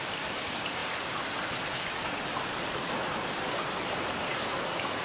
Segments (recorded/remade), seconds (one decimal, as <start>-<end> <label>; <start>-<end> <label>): 0.0-0.8 remade; 0.8-2.9 recorded; 2.9-5.0 remade